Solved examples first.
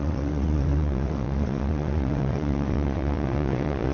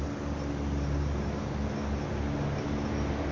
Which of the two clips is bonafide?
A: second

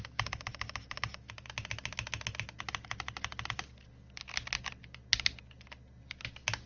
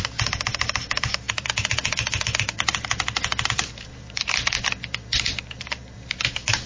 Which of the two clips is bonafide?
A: first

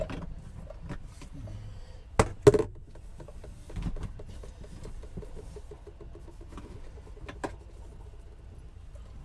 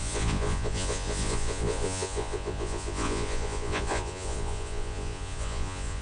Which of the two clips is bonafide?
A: first